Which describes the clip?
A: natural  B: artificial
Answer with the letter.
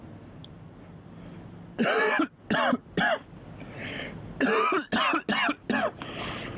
A